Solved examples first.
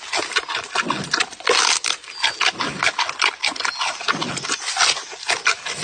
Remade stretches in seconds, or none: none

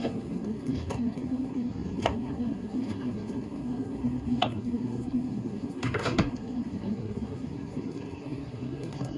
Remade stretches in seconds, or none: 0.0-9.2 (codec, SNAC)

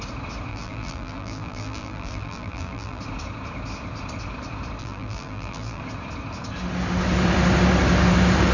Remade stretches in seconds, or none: 0.5-3.0 (vocoder, BigVGAN v2); 4.8-5.8

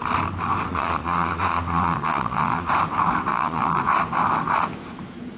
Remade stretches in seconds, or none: 0.7-2.7 (vocoder, Vocos); 3.3-3.8

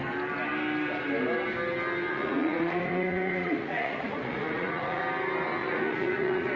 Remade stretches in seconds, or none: 2.1-5.0 (vocoder, Vocos); 5.6-6.6